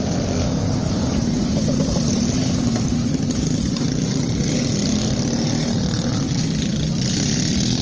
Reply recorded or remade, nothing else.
recorded